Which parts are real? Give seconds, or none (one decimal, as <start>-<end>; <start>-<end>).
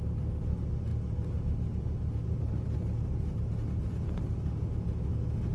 0.0-5.5